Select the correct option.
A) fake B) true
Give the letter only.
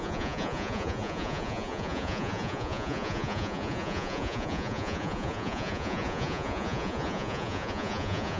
A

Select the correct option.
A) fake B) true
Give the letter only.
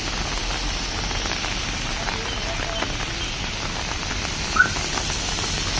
B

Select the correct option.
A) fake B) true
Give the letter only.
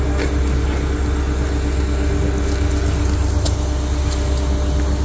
B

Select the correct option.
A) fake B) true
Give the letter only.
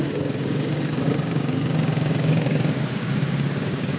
A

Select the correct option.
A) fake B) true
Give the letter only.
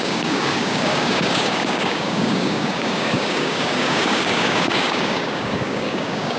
A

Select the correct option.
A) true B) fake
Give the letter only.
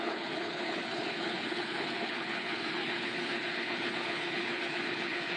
B